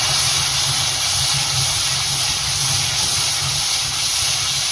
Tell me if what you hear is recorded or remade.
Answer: recorded